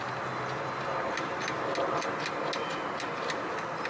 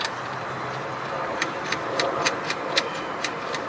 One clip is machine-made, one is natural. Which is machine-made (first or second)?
second